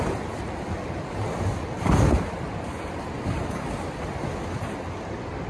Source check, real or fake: real